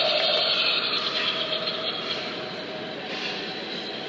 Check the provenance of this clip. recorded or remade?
recorded